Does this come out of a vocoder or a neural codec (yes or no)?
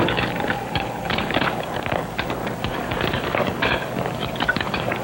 yes